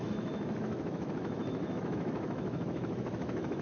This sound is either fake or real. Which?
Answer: fake